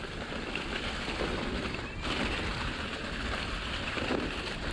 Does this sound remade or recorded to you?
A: recorded